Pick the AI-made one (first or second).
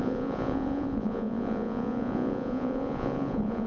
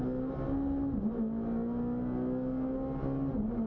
first